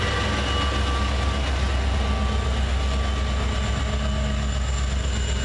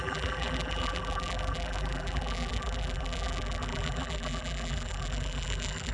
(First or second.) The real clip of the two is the first